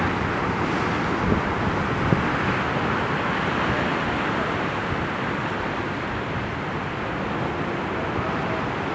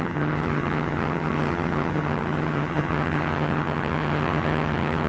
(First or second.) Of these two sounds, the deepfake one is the second